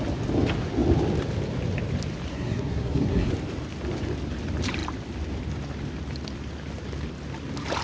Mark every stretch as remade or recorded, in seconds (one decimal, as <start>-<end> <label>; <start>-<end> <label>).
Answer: 0.0-2.3 recorded; 2.3-3.3 remade; 3.3-7.8 recorded